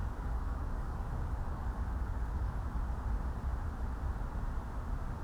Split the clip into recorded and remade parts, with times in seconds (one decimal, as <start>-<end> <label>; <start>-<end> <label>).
0.0-2.8 remade; 2.8-5.2 recorded